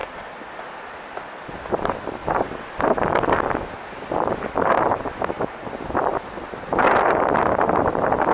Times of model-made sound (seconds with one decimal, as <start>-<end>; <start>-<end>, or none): none